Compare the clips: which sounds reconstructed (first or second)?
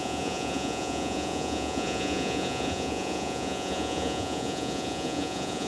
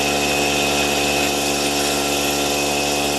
first